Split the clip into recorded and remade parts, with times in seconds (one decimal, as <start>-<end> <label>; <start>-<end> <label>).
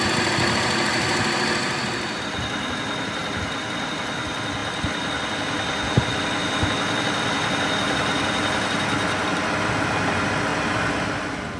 0.0-11.6 recorded